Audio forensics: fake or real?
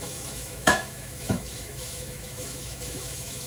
fake